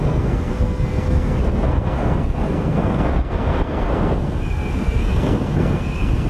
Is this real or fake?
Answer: fake